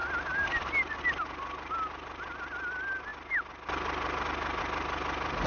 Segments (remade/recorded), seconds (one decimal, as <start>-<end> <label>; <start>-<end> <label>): 0.0-5.5 recorded